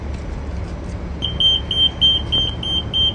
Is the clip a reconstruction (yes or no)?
no